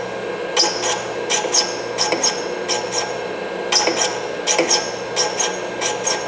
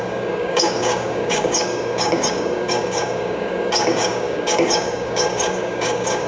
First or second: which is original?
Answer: first